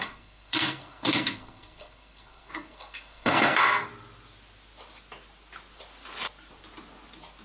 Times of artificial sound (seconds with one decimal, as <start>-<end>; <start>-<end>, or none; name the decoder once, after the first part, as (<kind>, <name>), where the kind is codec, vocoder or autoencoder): 0.0-3.9 (codec, SNAC)